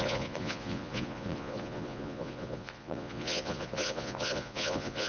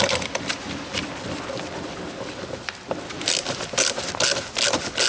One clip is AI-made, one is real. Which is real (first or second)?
second